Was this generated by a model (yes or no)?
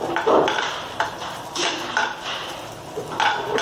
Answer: no